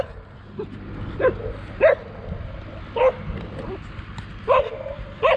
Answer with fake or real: real